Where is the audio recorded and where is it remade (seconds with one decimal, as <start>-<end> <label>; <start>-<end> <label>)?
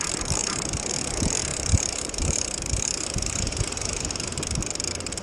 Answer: 0.0-0.4 recorded; 0.4-0.9 remade; 0.9-1.5 recorded; 1.5-4.6 remade; 4.6-5.2 recorded